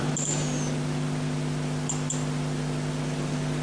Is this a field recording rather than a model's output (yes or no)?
yes